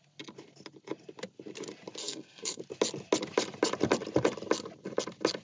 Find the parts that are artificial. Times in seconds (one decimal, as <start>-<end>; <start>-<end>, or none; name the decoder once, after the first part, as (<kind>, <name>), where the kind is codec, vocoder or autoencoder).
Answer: 2.0-2.6 (codec, SNAC)